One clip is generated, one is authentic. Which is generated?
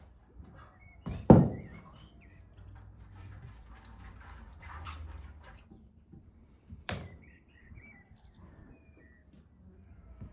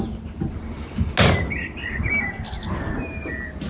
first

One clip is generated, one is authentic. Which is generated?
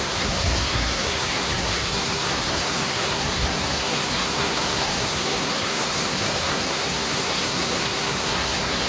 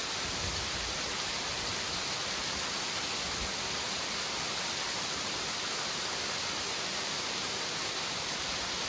first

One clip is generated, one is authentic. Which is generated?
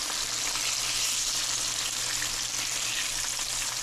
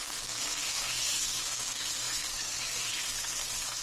second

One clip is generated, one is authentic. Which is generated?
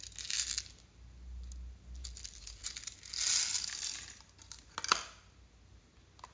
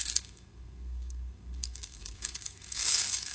second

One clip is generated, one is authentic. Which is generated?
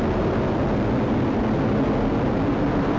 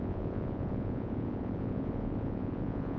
second